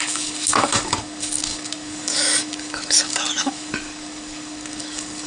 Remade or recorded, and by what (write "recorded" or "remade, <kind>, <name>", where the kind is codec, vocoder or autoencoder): remade, codec, DAC